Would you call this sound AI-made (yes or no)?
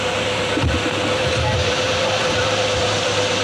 no